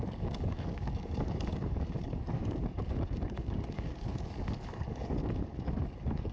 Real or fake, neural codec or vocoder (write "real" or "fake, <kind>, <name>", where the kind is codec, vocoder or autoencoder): fake, codec, DAC